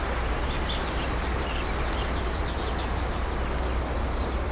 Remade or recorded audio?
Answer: recorded